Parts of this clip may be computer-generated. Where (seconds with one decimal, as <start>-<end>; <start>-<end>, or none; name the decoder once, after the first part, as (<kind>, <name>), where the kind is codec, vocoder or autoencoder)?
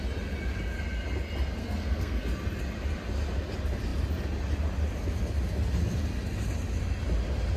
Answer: 1.6-2.2 (codec, SNAC)